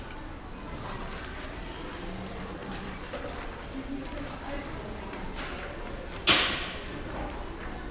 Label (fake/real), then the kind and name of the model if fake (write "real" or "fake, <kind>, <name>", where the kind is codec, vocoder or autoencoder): real